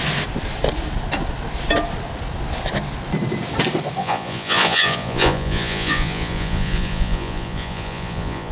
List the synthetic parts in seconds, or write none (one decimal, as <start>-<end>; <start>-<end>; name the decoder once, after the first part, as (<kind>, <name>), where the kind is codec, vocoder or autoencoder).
4.0-8.5 (vocoder, Vocos)